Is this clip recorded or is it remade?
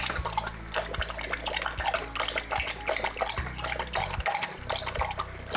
recorded